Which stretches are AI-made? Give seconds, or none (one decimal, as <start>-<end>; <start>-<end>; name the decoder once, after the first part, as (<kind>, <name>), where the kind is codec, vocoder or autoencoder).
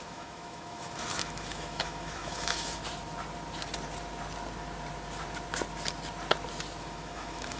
0.0-2.8 (autoencoder, DAC-VAE); 6.8-7.6